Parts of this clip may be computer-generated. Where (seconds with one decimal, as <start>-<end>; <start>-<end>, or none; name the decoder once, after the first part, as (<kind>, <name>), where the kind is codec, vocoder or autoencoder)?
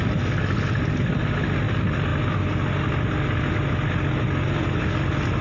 none